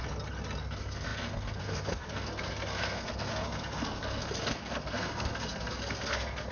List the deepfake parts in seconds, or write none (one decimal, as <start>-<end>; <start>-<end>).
0.6-6.5